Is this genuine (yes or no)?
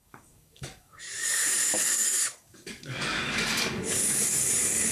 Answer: no